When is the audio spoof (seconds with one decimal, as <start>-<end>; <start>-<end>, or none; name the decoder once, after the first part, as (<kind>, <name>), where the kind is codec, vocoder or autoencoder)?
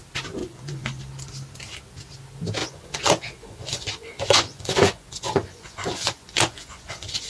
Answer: 0.4-1.0 (vocoder, Vocos); 2.6-7.3